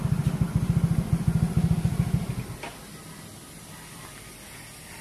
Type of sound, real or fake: real